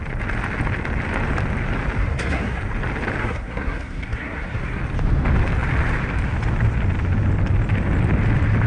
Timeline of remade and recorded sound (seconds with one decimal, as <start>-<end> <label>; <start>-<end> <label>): 0.0-2.0 recorded; 2.0-2.6 remade; 2.6-3.2 recorded; 3.2-4.8 remade; 4.8-8.7 recorded